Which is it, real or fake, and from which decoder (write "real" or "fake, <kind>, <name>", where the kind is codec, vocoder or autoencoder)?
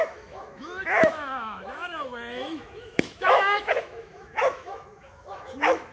fake, autoencoder, DAC-VAE